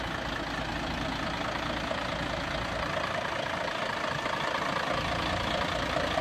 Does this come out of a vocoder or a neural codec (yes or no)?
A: no